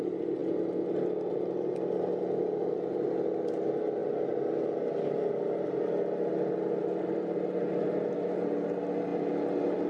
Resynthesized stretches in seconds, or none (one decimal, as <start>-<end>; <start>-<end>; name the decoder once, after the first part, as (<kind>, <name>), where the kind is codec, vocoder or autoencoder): none

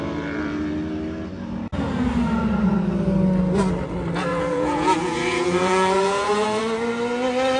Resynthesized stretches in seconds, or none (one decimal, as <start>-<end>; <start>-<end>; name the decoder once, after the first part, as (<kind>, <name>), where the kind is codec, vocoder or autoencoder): 4.3-6.6 (vocoder, Vocos)

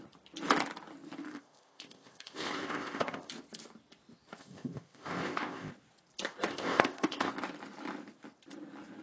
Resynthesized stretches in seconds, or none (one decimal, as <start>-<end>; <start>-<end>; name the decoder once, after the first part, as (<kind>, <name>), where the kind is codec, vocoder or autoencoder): 1.3-3.3 (codec, ZipCodec); 4.4-5.7; 6.5-7.3

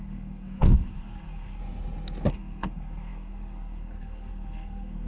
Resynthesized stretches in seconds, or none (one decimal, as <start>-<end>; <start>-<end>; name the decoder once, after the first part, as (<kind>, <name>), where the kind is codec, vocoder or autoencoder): 0.0-1.6 (codec, SNAC); 2.3-5.1

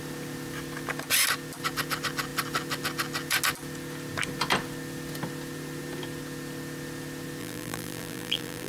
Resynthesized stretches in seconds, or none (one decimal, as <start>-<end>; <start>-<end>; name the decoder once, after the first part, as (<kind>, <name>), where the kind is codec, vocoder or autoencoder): 7.4-8.7 (vocoder, BigVGAN v2)

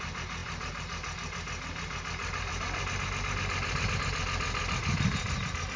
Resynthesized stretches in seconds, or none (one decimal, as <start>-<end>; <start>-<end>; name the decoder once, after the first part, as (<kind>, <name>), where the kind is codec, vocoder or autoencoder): none

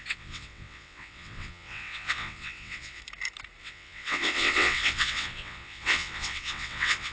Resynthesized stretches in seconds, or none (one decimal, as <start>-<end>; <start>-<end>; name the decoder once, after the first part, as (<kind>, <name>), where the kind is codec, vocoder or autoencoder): 0.0-3.0 (vocoder, WaveNeXt); 3.6-7.1